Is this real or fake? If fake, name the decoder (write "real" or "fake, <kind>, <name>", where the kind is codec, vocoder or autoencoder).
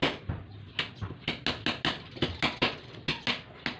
real